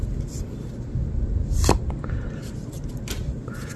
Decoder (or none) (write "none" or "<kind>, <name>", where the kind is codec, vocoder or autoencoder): none